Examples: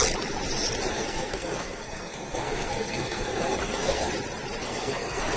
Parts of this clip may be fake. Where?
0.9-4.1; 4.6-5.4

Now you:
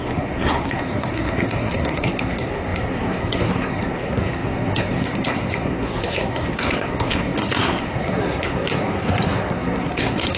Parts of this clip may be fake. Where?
0.0-10.4

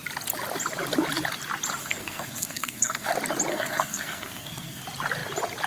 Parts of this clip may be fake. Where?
1.8-3.1; 3.5-4.8

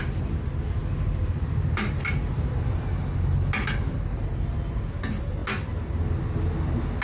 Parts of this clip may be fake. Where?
none

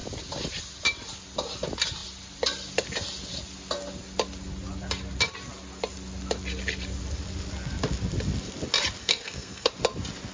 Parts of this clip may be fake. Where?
9.0-9.7

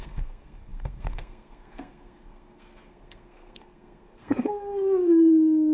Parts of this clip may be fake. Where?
0.0-5.7